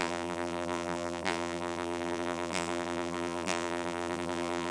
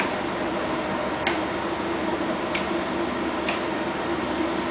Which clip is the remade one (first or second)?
first